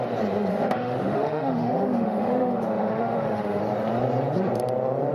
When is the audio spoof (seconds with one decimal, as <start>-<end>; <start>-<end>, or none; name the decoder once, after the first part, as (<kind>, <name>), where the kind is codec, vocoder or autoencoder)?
0.5-3.6 (autoencoder, DAC-VAE)